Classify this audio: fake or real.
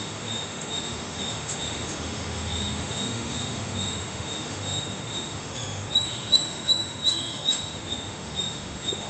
fake